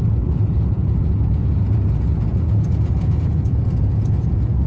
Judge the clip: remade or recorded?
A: remade